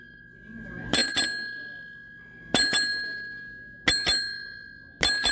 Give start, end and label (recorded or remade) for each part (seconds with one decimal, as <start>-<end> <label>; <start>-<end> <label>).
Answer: 0.0-5.3 recorded